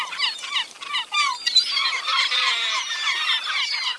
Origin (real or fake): real